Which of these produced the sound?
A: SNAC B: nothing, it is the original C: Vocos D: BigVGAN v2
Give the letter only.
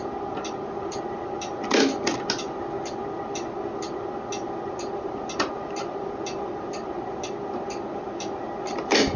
B